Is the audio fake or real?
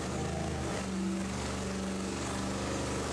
fake